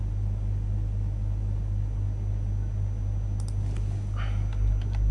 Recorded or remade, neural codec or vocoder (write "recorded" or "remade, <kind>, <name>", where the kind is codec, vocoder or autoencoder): recorded